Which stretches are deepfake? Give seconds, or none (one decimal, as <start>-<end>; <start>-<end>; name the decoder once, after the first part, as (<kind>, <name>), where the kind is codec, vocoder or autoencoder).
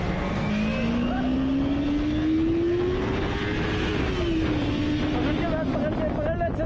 0.0-0.5 (codec, SNAC)